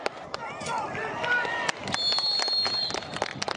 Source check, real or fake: real